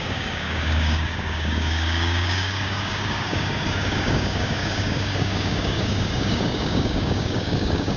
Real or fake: fake